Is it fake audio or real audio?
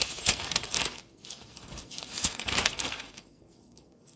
fake